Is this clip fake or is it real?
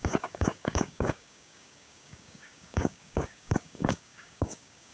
fake